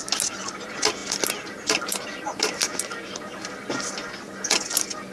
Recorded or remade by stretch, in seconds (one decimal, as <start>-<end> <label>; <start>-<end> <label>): 0.0-5.1 recorded